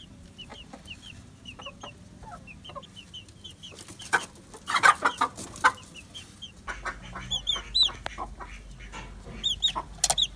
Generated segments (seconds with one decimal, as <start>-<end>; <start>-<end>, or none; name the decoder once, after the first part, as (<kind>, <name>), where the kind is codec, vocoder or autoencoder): none